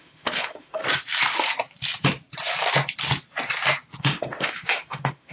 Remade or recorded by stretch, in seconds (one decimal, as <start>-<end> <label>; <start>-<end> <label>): 0.0-0.8 remade; 0.8-4.0 recorded; 4.0-5.3 remade